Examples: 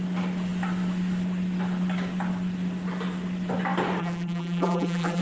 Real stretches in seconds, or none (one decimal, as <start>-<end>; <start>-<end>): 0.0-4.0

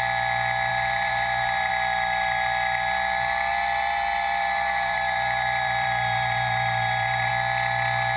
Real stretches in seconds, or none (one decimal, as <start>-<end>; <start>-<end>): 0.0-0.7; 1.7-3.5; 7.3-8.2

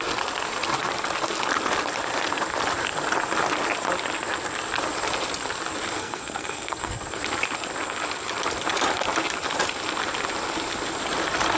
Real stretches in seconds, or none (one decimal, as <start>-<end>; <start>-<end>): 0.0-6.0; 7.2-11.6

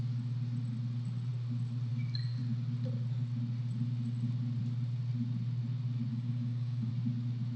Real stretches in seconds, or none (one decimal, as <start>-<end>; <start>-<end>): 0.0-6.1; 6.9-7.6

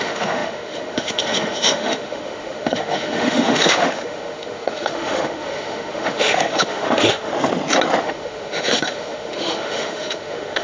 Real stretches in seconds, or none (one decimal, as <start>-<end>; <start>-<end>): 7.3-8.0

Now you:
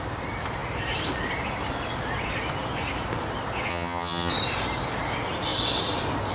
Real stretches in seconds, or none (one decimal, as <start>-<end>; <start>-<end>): 0.0-3.7; 4.3-6.3

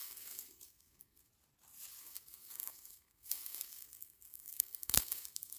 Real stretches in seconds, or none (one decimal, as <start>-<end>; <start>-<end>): 1.3-2.0